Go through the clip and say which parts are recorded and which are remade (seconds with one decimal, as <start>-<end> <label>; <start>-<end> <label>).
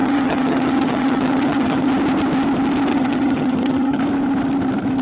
0.0-1.9 remade; 1.9-2.9 recorded; 2.9-4.0 remade; 4.0-5.0 recorded